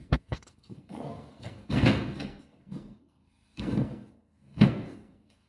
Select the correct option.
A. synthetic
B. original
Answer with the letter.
A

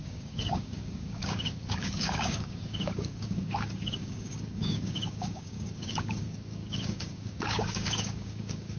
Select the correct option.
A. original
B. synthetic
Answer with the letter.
B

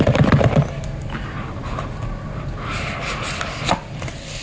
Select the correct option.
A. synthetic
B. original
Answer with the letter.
B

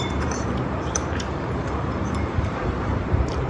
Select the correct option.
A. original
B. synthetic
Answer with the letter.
B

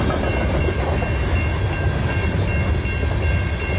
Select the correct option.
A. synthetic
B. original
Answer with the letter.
B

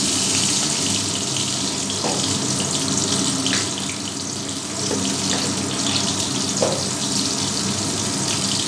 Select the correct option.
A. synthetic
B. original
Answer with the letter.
B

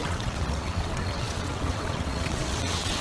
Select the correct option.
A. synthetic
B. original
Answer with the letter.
A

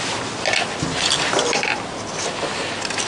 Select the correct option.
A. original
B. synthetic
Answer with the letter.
A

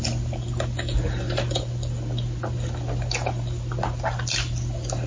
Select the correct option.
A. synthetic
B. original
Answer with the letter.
B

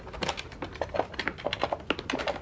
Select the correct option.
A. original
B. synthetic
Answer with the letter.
A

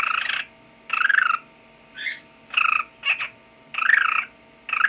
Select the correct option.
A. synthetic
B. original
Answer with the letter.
B